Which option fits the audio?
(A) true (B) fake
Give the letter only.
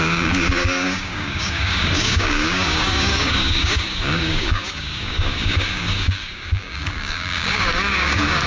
B